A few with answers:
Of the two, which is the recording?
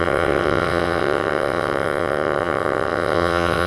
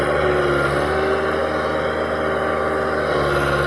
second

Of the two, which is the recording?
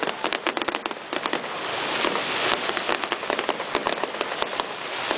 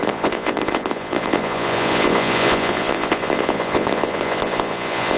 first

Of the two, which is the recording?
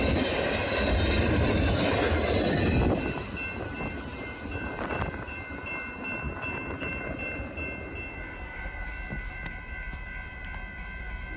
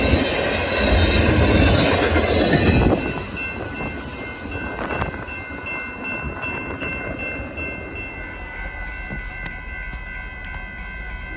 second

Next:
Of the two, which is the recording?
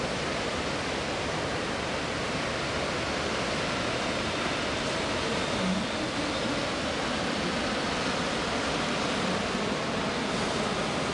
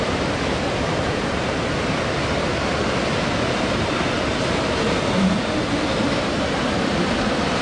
first